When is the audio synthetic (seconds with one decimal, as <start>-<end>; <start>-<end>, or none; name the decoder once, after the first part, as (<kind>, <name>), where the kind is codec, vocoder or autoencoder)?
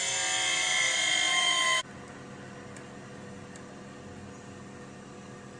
1.3-1.8 (autoencoder, DAC-VAE)